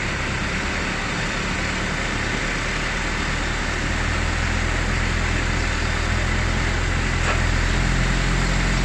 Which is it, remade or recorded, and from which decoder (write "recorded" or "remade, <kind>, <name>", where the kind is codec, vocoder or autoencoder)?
recorded